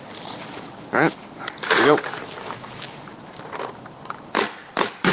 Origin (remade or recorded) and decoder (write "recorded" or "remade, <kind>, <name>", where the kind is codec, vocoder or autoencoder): remade, vocoder, BigVGAN v2